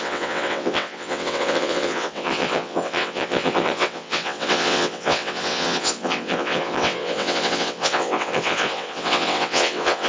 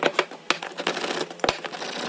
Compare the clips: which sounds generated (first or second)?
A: first